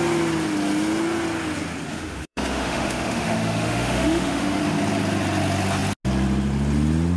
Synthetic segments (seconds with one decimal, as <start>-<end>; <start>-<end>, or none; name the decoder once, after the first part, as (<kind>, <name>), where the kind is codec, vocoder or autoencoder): 1.9-4.6 (autoencoder, DAC-VAE)